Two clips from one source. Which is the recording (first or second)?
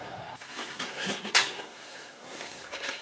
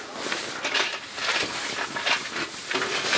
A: second